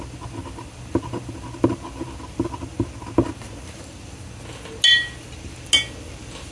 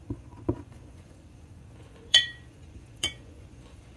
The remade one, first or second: second